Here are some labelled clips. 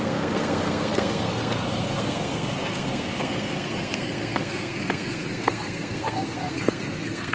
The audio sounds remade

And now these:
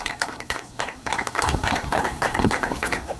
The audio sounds remade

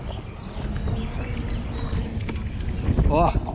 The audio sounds recorded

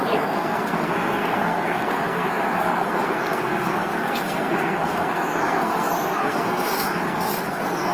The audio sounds remade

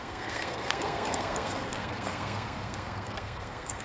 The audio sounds remade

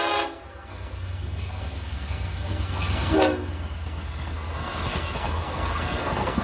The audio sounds remade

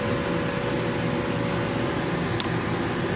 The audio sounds recorded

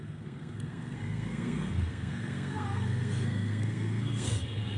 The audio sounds remade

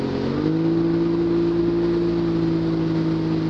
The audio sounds recorded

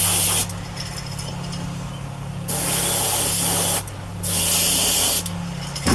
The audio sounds recorded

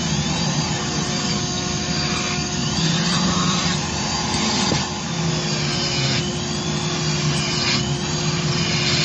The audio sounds recorded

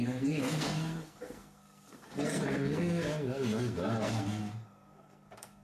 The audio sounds remade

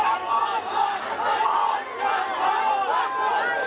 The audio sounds recorded